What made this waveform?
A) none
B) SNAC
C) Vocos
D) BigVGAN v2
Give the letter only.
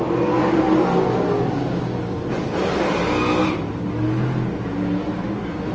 A